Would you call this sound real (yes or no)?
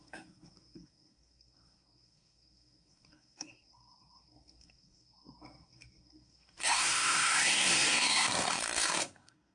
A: no